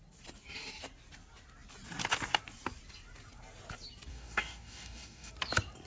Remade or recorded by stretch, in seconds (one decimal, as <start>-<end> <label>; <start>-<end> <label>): 0.0-4.1 recorded; 4.1-5.3 remade; 5.3-5.9 recorded